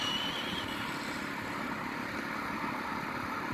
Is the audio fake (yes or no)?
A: no